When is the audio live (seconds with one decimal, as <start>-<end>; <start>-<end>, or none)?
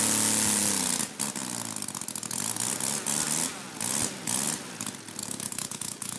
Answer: 0.0-5.2